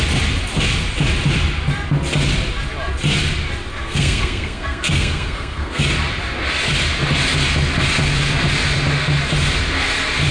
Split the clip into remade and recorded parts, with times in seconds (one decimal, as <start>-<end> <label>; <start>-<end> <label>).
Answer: 0.0-3.7 recorded; 3.7-5.8 remade; 5.8-10.3 recorded